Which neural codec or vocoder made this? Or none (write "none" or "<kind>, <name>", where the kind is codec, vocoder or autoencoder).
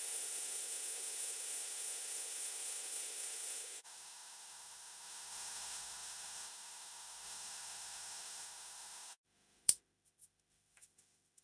autoencoder, DAC-VAE